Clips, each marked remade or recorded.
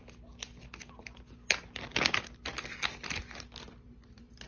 recorded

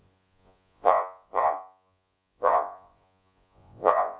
remade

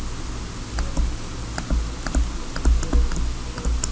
recorded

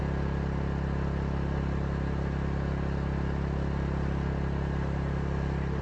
recorded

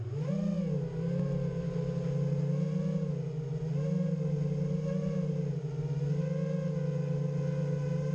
recorded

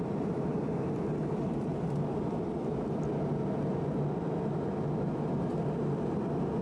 recorded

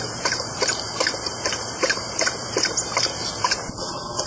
remade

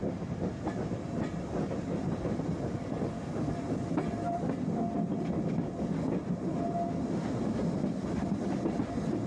recorded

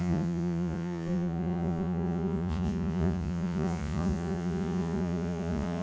remade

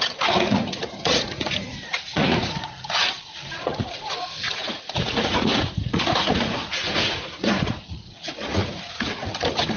remade